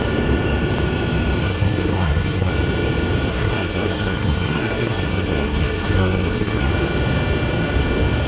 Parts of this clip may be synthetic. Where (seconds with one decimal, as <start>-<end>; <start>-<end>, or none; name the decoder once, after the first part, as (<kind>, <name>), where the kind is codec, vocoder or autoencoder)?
1.4-2.5 (codec, SNAC); 3.3-6.7